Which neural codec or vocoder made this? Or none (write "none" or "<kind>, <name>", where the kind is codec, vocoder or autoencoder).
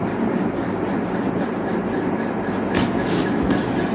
none